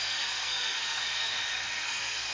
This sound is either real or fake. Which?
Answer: fake